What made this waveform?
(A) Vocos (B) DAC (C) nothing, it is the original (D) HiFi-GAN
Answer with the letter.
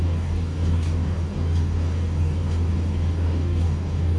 B